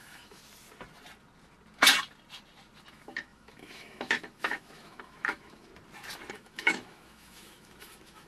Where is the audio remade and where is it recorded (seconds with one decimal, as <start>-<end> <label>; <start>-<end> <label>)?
0.0-0.4 remade; 0.4-2.9 recorded; 2.9-5.7 remade; 5.7-6.3 recorded; 6.3-8.3 remade